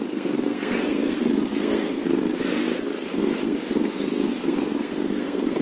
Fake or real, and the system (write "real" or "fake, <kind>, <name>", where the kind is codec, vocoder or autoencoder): fake, codec, SNAC